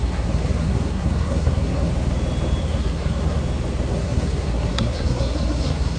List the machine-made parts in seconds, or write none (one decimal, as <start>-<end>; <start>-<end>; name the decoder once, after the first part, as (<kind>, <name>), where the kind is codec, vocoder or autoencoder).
0.0-1.9 (codec, SNAC); 2.6-3.4; 3.9-6.0